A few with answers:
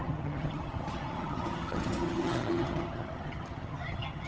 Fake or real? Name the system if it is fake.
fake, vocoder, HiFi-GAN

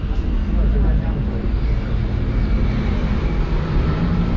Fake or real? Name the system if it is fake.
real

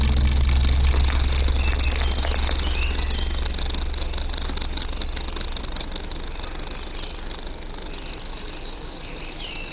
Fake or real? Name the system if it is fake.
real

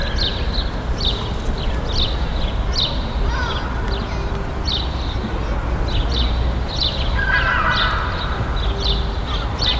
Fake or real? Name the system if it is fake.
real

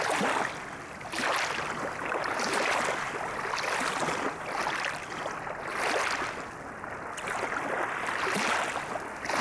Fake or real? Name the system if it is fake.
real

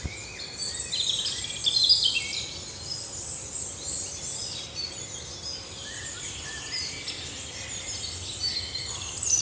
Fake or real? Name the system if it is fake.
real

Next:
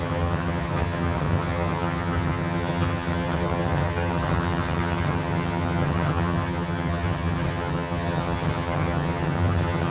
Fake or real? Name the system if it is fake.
fake, vocoder, HiFi-GAN